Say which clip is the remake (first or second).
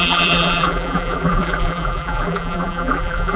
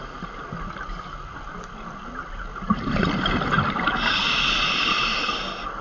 first